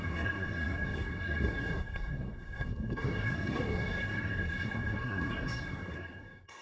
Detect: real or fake fake